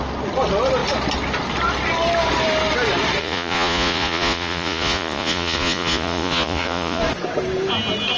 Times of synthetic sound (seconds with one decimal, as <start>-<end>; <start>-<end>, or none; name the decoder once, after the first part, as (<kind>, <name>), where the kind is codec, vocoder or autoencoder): 3.2-7.0 (vocoder, Vocos)